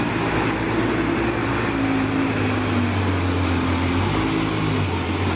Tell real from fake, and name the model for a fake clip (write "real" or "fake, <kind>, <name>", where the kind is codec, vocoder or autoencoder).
real